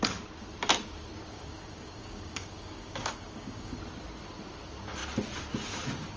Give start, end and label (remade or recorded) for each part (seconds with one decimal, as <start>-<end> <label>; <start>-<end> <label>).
0.0-1.3 recorded; 1.3-3.8 remade; 3.8-6.2 recorded